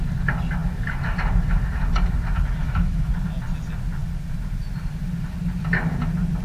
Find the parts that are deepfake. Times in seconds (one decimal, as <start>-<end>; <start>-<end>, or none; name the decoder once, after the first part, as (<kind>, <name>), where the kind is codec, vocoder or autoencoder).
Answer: 2.6-3.1 (autoencoder, DAC-VAE)